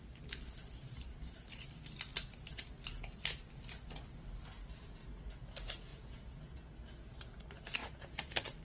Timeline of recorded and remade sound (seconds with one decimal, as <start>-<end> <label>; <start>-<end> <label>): 0.0-5.9 recorded; 5.9-6.7 remade; 6.7-7.8 recorded; 7.8-8.6 remade